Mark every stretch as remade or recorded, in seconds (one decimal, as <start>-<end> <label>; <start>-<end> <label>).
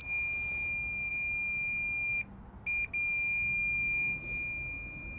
0.0-5.2 recorded